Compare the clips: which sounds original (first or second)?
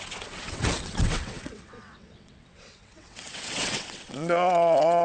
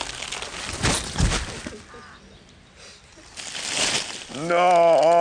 second